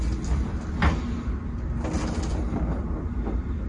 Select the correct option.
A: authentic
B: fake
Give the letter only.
A